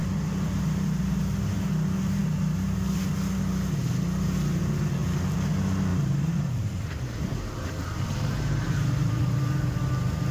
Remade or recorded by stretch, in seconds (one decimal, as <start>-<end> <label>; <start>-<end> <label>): 0.0-5.9 recorded; 5.9-9.6 remade; 9.6-10.3 recorded